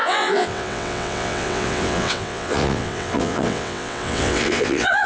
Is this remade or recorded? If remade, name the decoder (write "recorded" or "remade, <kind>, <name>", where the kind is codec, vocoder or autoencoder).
remade, vocoder, WaveNeXt